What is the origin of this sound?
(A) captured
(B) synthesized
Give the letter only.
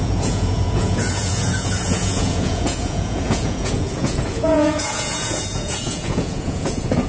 B